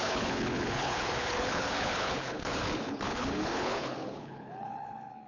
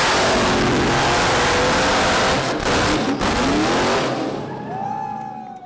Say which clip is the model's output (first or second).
first